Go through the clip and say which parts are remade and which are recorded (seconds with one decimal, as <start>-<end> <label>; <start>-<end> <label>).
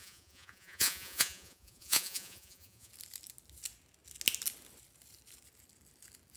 0.0-2.9 remade; 2.9-6.4 recorded